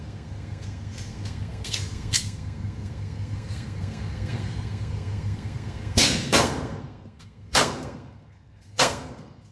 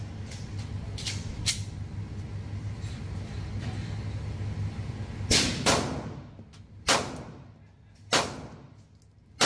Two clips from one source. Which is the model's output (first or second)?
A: first